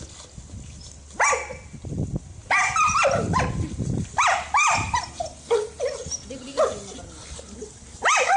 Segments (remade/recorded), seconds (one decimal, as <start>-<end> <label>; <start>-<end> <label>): 0.0-8.4 recorded